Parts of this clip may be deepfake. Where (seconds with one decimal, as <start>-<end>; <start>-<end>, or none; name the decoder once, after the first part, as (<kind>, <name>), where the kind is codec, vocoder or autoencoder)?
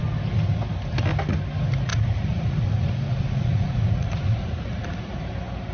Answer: 1.9-5.3 (vocoder, Vocos)